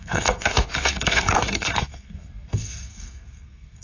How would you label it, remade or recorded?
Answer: remade